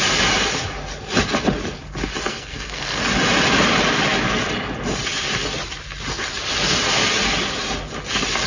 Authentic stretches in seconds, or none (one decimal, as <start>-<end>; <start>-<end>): 0.0-2.3; 3.0-8.5